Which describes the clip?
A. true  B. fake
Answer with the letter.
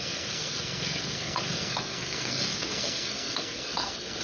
B